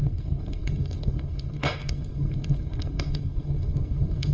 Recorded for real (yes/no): no